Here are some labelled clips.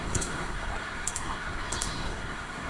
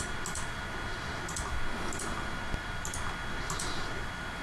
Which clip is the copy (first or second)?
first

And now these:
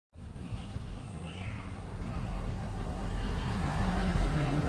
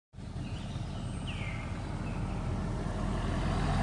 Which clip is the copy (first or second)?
first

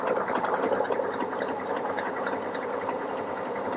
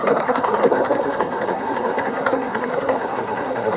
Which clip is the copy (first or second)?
second